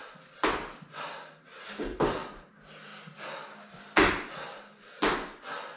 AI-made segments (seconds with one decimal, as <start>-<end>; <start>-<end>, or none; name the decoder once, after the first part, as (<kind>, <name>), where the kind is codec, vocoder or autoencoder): none